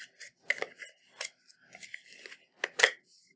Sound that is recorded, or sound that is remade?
recorded